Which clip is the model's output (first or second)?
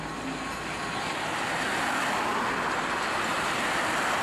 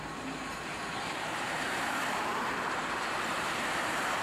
second